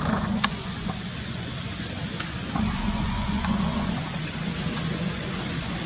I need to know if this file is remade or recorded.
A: remade